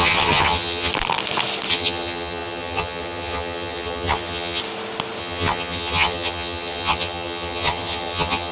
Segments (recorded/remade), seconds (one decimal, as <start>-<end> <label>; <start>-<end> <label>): 0.0-0.9 remade; 0.9-1.7 recorded; 1.7-4.6 remade; 4.6-5.2 recorded; 5.2-8.5 remade